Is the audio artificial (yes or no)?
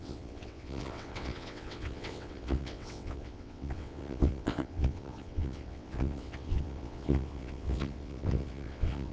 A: yes